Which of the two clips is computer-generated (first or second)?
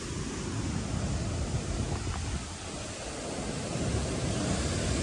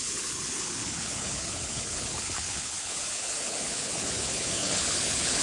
second